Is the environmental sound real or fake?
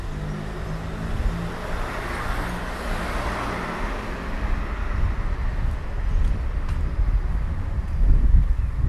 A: real